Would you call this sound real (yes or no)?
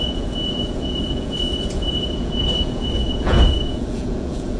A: no